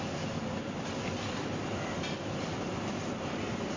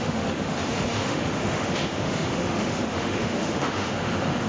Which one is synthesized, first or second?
second